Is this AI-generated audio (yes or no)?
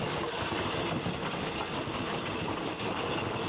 no